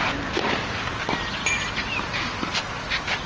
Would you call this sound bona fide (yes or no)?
yes